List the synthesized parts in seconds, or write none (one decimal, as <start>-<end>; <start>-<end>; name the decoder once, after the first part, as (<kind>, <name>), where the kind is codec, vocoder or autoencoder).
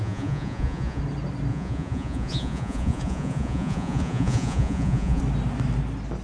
0.0-1.0 (vocoder, Vocos); 1.5-5.2